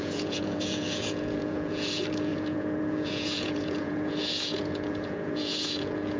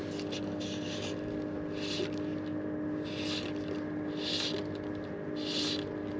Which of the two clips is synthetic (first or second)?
first